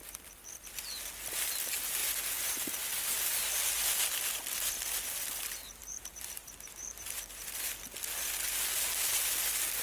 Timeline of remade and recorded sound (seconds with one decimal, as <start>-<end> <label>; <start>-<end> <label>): 0.0-5.8 recorded; 5.8-7.7 remade; 7.7-9.8 recorded